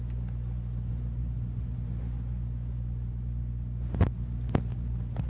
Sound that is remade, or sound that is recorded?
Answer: recorded